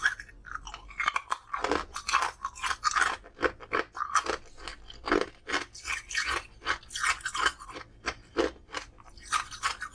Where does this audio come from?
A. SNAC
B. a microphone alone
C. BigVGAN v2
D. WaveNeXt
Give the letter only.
B